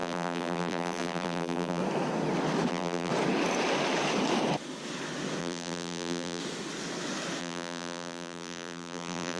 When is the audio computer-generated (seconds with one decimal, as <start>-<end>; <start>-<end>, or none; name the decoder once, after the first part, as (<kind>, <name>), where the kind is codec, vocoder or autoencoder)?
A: 0.0-1.8 (vocoder, BigVGAN v2); 2.7-3.1; 5.4-6.4; 7.4-9.4